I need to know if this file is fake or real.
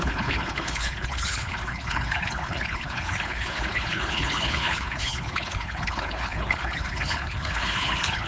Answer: fake